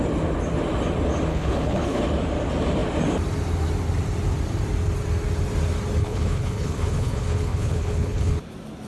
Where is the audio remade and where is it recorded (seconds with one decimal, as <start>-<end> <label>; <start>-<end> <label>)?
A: 0.0-1.3 recorded; 1.3-2.0 remade; 2.0-6.0 recorded; 6.0-8.4 remade; 8.4-8.9 recorded